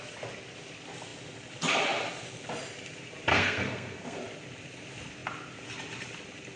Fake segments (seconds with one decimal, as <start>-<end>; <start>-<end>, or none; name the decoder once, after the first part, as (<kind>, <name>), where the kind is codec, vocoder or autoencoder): 3.3-4.2 (codec, SNAC)